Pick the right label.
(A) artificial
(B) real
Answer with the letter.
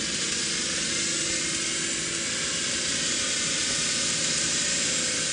B